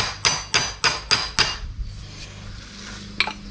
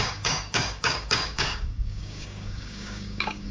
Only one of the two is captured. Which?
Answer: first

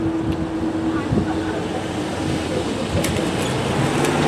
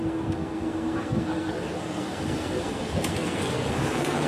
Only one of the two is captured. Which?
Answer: first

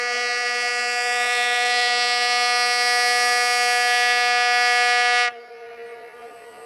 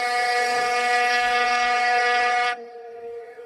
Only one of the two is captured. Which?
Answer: first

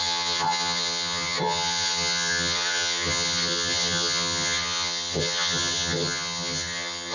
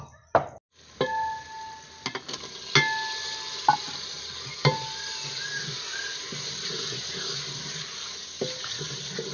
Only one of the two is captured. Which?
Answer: second